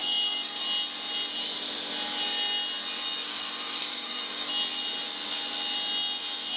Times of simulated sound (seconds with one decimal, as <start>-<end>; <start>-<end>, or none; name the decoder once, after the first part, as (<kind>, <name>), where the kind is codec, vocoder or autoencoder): 0.0-0.6 (codec, DAC); 3.3-4.5